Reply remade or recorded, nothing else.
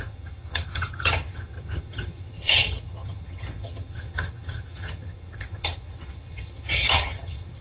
remade